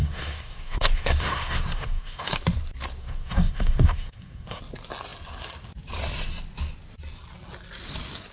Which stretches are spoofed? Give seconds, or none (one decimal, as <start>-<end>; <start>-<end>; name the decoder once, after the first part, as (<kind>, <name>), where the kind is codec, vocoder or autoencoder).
0.0-2.3 (codec, SNAC); 3.0-4.6